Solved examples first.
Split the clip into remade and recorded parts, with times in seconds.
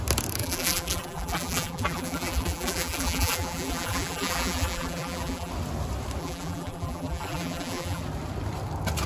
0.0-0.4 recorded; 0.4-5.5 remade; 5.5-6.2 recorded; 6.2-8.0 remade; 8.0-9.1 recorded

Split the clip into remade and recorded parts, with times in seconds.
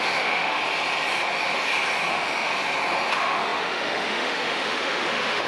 0.0-0.6 remade; 0.6-2.1 recorded; 2.1-2.5 remade; 2.5-3.1 recorded; 3.1-5.5 remade